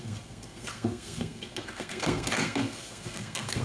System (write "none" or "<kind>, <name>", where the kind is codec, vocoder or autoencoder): codec, SNAC